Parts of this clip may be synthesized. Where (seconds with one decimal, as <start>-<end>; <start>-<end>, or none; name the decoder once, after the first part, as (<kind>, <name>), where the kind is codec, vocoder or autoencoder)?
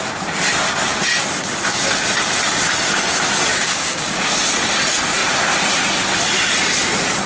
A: 3.5-4.2 (codec, DAC)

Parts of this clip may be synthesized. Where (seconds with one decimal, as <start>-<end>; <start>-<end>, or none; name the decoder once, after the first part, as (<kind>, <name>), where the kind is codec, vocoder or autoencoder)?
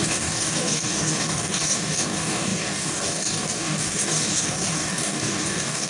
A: 0.0-5.9 (codec, DAC)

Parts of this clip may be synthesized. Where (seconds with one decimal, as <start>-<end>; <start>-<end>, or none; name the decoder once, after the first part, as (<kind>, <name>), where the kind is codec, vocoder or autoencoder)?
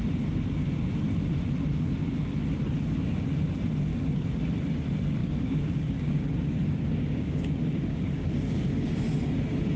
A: 3.9-4.4 (codec, DAC); 5.2-8.9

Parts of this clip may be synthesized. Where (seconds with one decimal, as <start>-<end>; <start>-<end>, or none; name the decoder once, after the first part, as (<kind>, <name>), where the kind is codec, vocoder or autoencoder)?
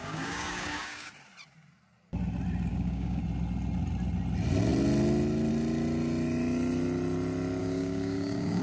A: 0.0-1.1 (codec, DAC); 2.7-3.2; 7.6-8.6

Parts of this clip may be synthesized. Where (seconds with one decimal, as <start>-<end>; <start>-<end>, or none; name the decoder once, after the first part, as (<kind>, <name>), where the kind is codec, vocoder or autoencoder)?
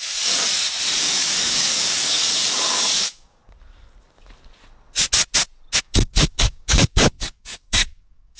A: 0.0-0.5 (codec, DAC); 1.0-3.4; 5.8-8.4